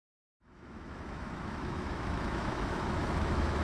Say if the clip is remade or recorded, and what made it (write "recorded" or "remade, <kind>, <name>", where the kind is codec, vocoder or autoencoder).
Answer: remade, autoencoder, DAC-VAE